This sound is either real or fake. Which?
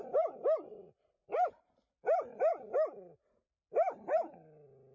real